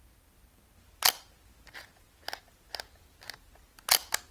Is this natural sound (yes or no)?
yes